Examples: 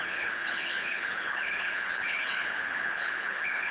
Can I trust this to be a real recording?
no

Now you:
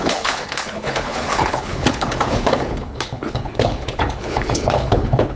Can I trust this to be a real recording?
no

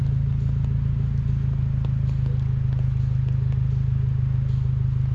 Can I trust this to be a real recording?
yes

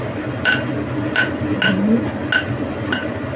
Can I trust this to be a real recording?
yes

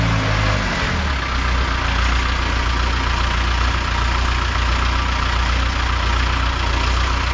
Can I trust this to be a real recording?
yes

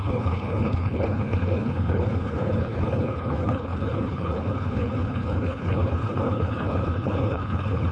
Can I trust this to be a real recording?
no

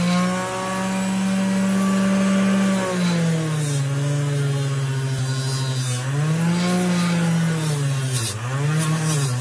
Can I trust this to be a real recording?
yes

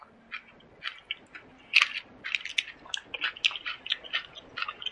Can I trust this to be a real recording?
yes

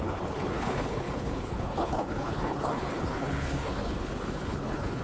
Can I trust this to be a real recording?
no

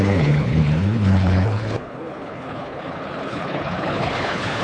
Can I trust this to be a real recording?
no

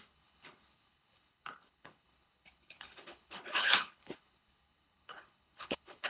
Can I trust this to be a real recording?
no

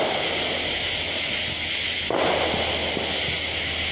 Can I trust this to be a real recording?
yes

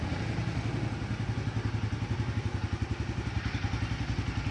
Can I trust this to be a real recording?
yes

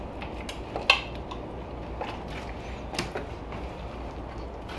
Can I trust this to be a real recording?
yes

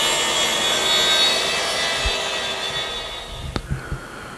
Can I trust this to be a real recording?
yes